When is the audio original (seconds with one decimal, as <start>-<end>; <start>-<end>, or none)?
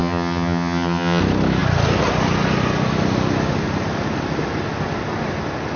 1.2-5.8